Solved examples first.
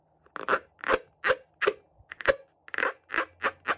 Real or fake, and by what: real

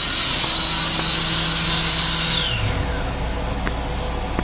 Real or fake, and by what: real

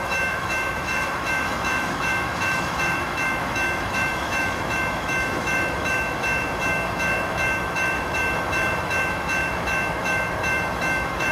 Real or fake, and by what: fake, autoencoder, DAC-VAE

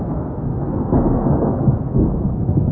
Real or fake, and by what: fake, codec, SNAC